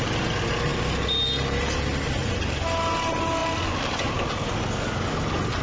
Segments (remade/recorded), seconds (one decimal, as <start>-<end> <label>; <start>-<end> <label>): 0.0-5.6 recorded